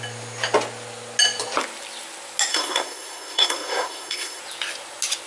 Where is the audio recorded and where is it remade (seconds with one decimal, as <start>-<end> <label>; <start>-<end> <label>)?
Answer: 0.0-2.5 recorded; 2.5-4.4 remade; 4.4-5.3 recorded